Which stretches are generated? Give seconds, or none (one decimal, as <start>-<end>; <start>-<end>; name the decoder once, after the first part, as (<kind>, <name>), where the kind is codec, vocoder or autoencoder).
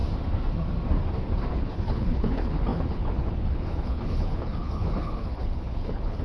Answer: 1.5-6.2 (codec, HILCodec)